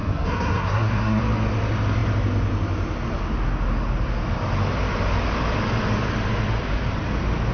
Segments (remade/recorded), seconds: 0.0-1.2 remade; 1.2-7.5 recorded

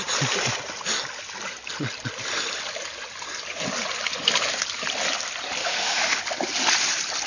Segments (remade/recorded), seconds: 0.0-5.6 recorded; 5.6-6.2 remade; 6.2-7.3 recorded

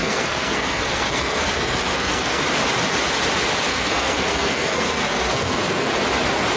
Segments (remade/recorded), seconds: 0.0-2.4 remade; 2.4-3.7 recorded; 3.7-5.9 remade; 5.9-6.6 recorded